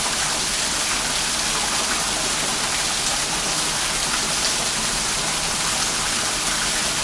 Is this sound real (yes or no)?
yes